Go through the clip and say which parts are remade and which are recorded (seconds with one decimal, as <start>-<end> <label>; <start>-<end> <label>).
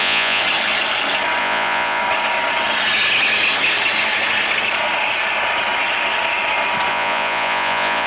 0.0-0.4 remade; 0.4-1.4 recorded; 1.4-2.0 remade; 2.0-6.9 recorded; 6.9-8.1 remade